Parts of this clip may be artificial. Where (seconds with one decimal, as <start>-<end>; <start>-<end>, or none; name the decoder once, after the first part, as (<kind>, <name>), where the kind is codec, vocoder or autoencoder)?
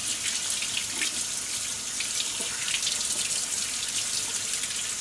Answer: none